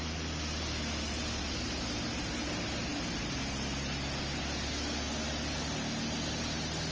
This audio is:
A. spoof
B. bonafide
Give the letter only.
B